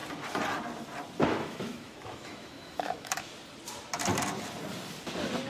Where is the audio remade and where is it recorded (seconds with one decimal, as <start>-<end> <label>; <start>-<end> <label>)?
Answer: 0.0-1.2 recorded; 1.2-3.3 remade; 3.3-5.5 recorded